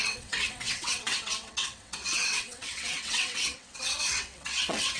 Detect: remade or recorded remade